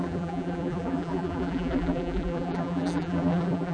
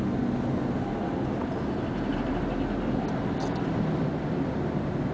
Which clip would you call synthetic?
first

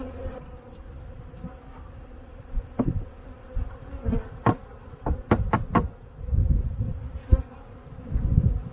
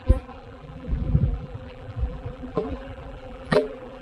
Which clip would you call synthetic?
second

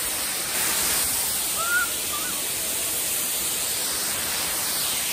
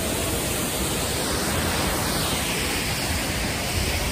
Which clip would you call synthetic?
first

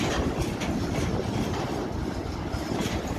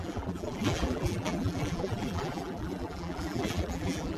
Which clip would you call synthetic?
second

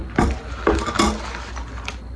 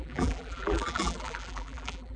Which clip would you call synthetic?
second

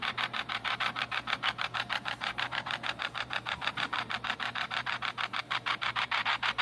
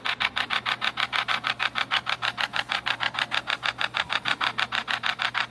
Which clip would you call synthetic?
first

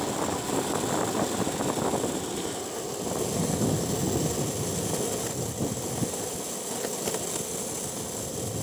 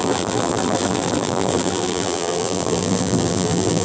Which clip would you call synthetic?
second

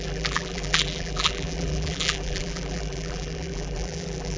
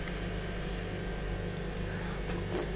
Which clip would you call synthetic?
first